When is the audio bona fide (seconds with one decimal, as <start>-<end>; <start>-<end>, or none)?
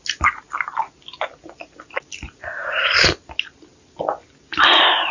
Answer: 0.0-5.1